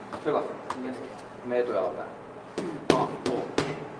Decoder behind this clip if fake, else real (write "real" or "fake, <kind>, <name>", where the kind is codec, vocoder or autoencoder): real